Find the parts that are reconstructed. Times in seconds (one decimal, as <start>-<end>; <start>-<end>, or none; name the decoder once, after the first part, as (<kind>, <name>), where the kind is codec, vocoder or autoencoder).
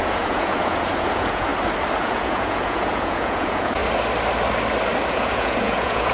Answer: 0.0-1.5 (vocoder, Vocos); 2.0-3.8; 5.1-6.1